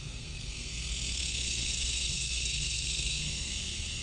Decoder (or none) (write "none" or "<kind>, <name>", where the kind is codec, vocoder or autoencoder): codec, SNAC